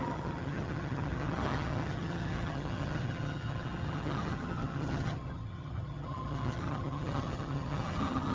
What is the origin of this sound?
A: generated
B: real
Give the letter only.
A